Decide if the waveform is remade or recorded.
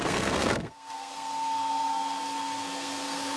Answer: remade